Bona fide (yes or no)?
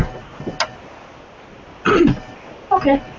yes